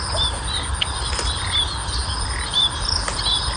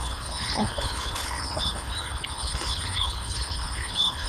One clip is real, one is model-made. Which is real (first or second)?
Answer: first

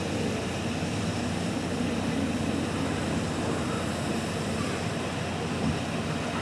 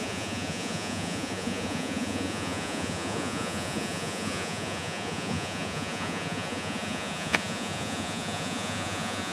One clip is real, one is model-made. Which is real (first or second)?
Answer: first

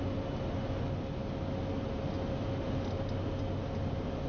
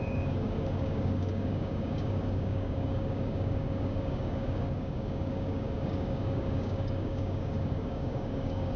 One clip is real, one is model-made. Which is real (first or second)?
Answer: first